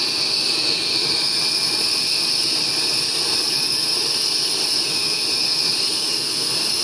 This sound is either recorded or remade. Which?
recorded